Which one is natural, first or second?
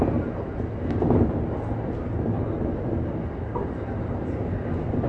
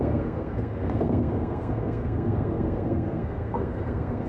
first